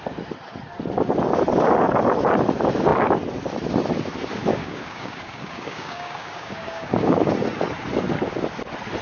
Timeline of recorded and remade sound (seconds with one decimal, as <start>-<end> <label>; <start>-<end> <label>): 0.0-4.5 recorded; 4.5-7.2 remade; 7.2-9.0 recorded